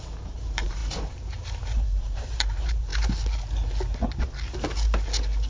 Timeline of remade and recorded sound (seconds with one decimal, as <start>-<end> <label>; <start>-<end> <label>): 0.0-2.9 remade; 2.9-5.5 recorded